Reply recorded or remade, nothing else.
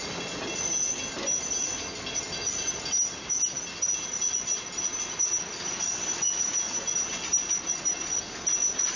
recorded